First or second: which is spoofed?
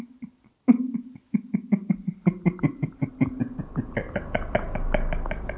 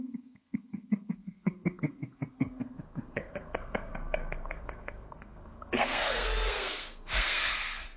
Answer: second